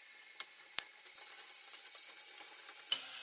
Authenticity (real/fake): real